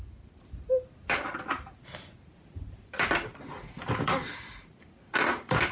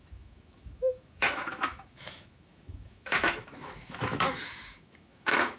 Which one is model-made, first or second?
second